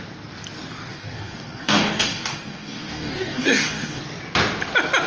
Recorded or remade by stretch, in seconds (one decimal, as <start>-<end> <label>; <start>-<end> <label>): 0.0-0.9 recorded; 0.9-4.0 remade; 4.0-5.1 recorded